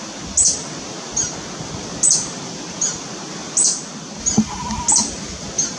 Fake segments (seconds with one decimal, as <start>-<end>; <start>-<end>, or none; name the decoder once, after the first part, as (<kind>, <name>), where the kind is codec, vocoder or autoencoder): none